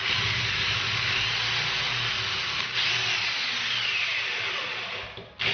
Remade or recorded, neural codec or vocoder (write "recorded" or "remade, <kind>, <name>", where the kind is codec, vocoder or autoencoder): recorded